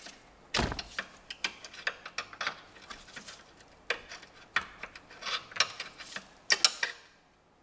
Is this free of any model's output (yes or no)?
yes